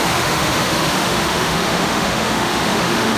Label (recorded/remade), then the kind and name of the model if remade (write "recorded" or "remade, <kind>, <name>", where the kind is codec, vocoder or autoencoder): remade, autoencoder, DAC-VAE